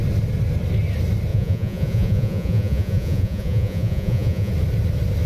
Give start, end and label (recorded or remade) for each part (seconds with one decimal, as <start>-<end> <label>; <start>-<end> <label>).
0.0-1.3 recorded; 1.3-4.5 remade; 4.5-5.3 recorded